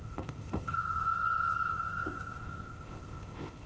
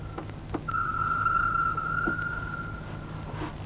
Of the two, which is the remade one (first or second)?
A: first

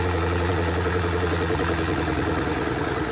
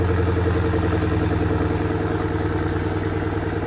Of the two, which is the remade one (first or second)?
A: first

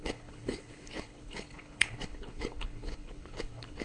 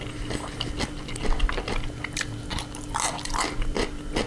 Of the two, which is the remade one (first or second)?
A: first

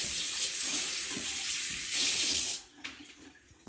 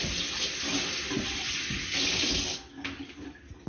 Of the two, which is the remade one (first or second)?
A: first